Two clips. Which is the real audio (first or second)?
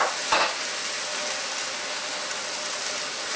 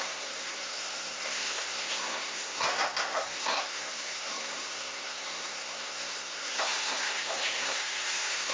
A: first